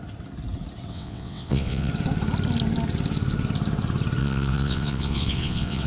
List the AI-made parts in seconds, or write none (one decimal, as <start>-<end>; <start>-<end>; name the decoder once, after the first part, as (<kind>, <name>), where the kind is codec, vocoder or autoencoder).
0.9-1.9 (vocoder, WaveNeXt); 4.2-5.9